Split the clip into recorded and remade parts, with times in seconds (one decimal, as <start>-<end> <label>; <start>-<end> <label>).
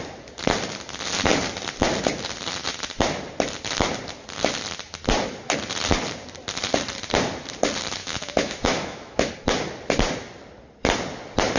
0.0-8.0 recorded; 8.0-9.3 remade; 9.3-11.6 recorded